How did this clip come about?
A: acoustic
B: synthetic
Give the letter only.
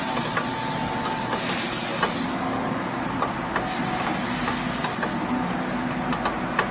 A